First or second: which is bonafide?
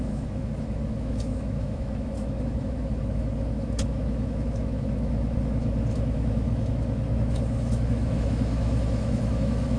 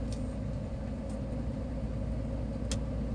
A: second